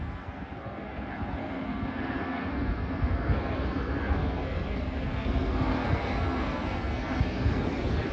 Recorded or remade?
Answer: remade